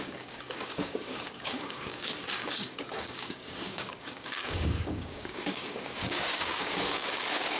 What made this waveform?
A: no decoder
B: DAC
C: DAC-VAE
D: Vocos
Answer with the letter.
B